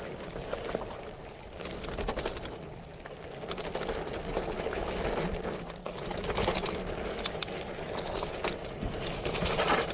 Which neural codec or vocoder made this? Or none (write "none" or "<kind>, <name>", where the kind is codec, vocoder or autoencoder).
none